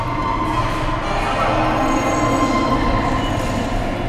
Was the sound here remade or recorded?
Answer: recorded